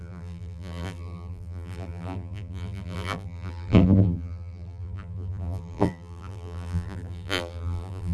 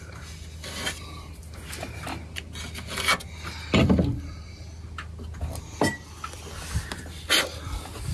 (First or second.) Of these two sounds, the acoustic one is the second